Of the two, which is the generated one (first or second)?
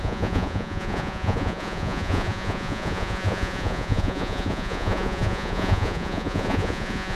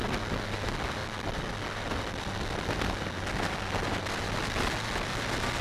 first